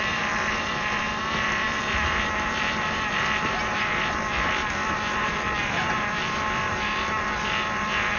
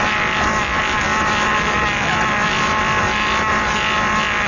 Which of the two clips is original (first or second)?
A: second